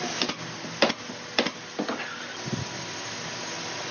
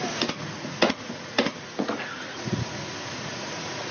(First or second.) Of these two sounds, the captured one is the first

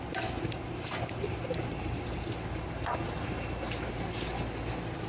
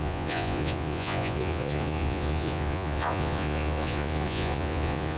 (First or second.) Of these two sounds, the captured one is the first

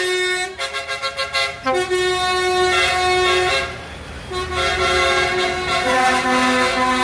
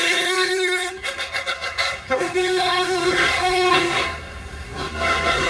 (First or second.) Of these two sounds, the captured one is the first